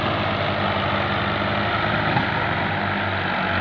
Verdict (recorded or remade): recorded